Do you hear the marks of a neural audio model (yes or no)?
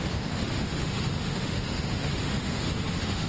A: yes